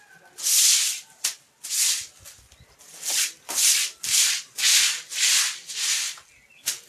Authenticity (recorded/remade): recorded